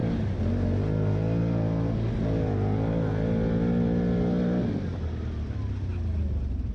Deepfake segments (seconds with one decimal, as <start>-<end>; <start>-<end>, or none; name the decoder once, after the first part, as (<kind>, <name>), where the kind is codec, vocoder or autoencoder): none